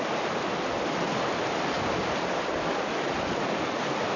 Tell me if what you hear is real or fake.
real